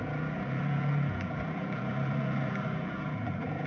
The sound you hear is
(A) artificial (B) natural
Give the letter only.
A